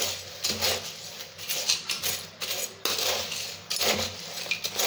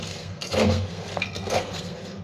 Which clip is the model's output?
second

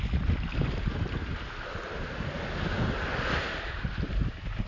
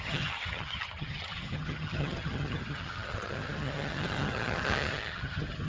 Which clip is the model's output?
second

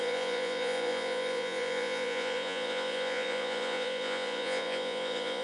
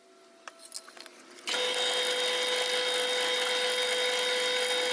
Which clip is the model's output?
first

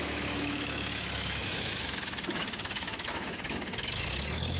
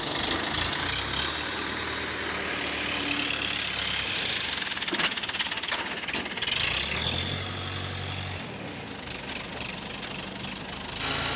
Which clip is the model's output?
first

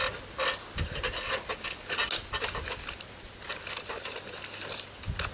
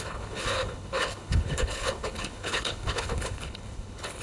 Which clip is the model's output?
second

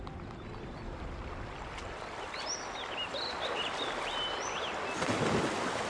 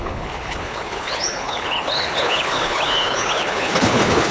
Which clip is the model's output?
second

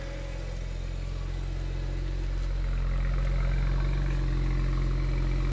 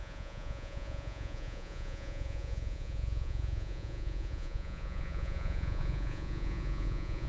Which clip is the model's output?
second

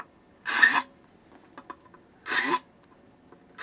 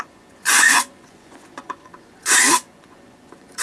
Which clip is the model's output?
second